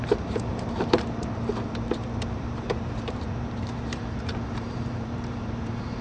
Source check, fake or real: fake